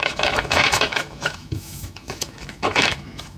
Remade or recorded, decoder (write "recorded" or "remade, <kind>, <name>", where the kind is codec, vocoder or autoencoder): remade, autoencoder, DAC-VAE